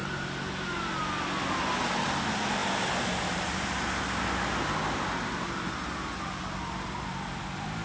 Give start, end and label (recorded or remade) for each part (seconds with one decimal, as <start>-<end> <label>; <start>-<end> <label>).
0.0-7.8 recorded